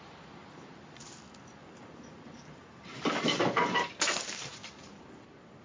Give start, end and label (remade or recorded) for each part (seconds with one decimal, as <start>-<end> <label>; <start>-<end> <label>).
0.0-0.4 recorded; 0.4-1.1 remade; 1.1-1.6 recorded; 1.6-5.0 remade; 5.0-5.6 recorded